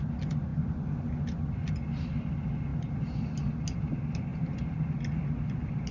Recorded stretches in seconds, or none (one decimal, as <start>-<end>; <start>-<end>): 0.0-5.9